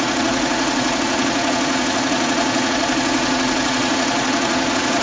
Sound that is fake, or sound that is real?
fake